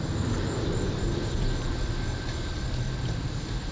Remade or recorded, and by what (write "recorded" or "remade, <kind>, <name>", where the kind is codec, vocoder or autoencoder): recorded